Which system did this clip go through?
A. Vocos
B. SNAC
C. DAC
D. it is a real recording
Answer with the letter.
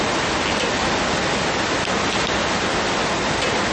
D